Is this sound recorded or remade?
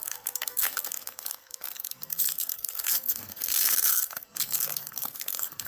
remade